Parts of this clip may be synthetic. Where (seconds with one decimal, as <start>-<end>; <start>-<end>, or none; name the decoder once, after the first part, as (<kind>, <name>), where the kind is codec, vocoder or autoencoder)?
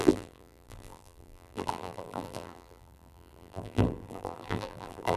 0.0-5.2 (vocoder, BigVGAN v2)